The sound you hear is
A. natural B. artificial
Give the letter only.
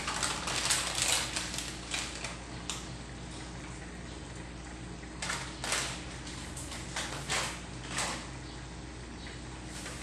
A